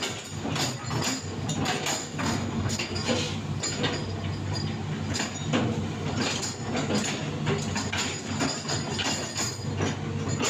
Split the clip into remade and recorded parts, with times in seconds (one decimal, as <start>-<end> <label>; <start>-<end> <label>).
0.0-2.0 recorded; 2.0-2.9 remade; 2.9-10.5 recorded